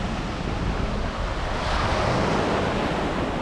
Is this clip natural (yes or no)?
yes